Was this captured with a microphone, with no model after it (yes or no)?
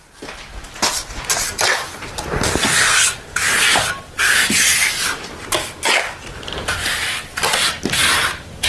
yes